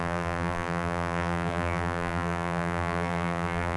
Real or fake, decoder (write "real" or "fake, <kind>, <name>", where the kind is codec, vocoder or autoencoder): fake, vocoder, BigVGAN v2